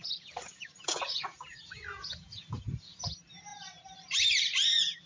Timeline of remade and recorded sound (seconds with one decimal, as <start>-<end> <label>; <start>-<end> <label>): 0.0-3.1 remade; 3.1-5.1 recorded